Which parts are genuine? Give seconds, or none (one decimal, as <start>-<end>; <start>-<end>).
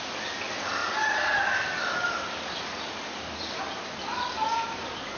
0.0-5.2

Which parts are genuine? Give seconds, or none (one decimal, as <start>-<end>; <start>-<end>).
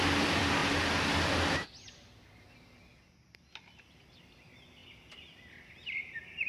0.6-2.5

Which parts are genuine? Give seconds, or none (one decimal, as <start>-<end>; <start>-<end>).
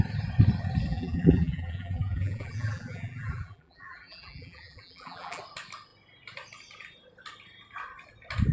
0.0-0.9; 5.4-8.5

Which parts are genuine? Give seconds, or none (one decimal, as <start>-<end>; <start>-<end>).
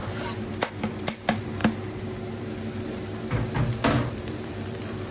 1.6-4.1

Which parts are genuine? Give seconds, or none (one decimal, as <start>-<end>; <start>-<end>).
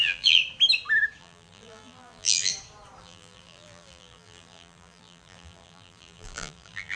0.4-1.2; 2.5-3.0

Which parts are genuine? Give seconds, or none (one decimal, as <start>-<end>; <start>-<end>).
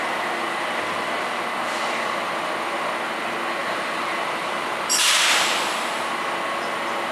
1.4-3.6; 6.1-7.1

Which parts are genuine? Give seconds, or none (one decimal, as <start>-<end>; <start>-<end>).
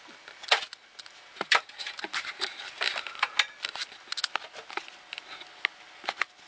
0.0-0.9; 2.8-6.5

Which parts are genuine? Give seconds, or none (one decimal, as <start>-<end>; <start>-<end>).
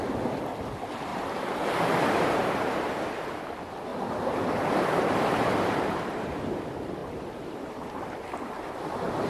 0.0-1.1; 3.5-3.9; 6.4-7.0; 8.0-9.3